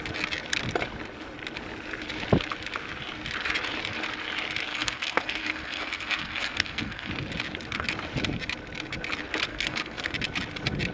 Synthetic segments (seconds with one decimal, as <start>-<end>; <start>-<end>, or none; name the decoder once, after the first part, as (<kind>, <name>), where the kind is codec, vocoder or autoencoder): 4.7-7.1 (codec, SNAC); 9.5-10.1